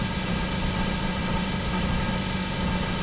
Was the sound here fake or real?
fake